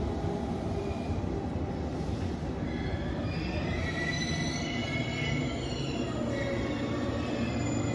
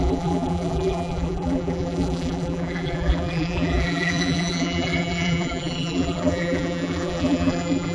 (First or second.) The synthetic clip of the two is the second